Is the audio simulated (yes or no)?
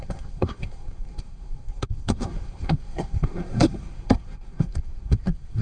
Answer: yes